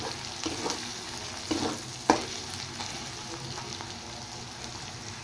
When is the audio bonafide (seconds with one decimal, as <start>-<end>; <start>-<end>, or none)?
0.0-0.8; 1.3-5.2